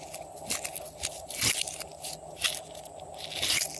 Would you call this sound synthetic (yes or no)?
no